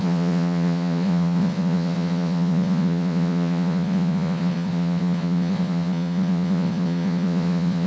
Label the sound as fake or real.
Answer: fake